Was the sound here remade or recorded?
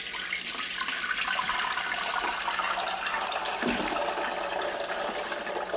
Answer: recorded